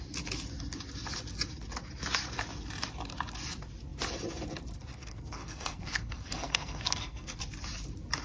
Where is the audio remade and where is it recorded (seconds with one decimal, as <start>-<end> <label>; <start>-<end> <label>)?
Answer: 0.0-4.9 recorded; 4.9-7.4 remade; 7.4-8.2 recorded